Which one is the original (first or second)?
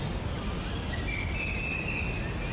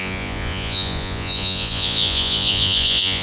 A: first